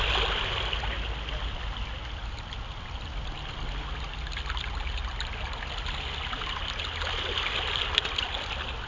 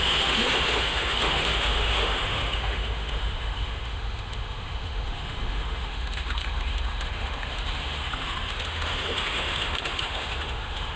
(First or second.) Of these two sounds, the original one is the first